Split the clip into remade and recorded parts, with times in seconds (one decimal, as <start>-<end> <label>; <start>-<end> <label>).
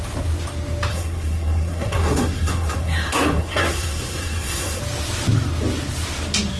0.0-0.9 recorded; 0.9-4.8 remade; 4.8-6.6 recorded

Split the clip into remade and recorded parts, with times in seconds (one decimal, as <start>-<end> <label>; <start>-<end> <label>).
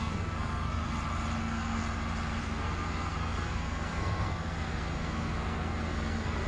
0.0-0.8 remade; 0.8-1.4 recorded; 1.4-1.8 remade; 1.8-2.4 recorded; 2.4-6.5 remade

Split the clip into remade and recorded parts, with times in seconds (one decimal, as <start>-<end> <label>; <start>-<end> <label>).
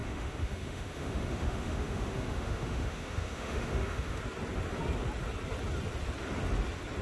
0.0-4.2 remade; 4.2-7.0 recorded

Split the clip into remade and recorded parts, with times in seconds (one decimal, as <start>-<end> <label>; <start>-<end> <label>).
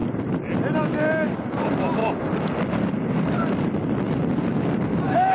0.0-0.5 remade; 0.5-2.0 recorded; 2.0-3.3 remade; 3.3-5.3 recorded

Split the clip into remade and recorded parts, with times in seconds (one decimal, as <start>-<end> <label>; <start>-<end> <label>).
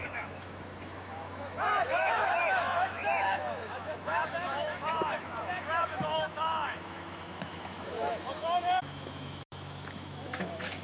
0.0-10.8 remade